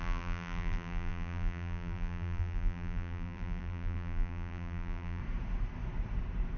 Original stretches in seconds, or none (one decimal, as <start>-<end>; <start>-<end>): 5.2-6.6